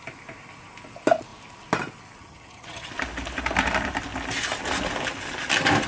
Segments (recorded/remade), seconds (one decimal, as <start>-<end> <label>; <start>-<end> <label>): 0.0-2.2 recorded; 2.2-2.9 remade; 2.9-5.9 recorded